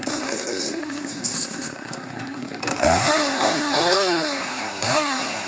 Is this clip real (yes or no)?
no